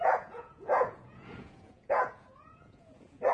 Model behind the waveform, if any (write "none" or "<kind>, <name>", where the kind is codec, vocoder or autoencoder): vocoder, Vocos